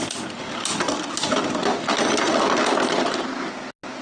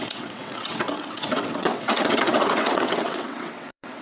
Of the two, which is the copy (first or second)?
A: second